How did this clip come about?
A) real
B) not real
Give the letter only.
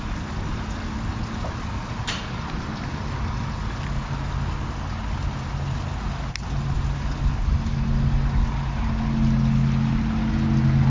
A